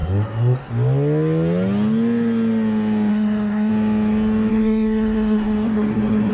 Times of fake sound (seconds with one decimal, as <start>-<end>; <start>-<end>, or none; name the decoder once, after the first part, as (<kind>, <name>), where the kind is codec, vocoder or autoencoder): 0.0-0.7 (codec, SNAC); 3.1-3.7; 4.5-6.3